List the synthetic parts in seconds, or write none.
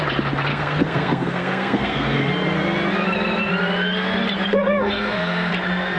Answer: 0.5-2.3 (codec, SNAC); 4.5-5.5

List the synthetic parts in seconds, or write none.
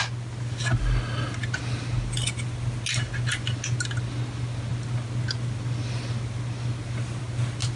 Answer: none